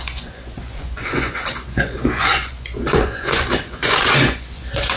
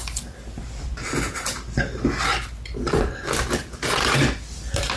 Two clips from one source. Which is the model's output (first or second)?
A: first